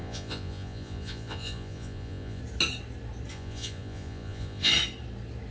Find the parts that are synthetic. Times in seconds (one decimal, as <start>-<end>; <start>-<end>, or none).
0.0-2.4; 3.3-4.7